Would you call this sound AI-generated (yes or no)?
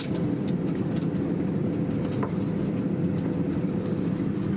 no